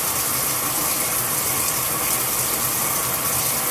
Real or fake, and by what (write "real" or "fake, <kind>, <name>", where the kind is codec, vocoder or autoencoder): real